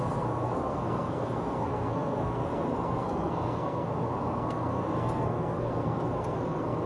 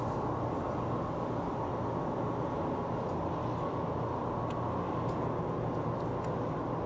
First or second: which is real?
second